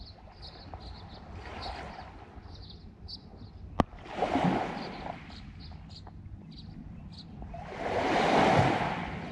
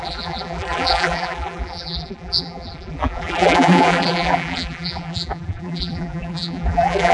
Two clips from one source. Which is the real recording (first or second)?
first